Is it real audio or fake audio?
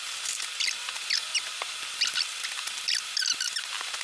real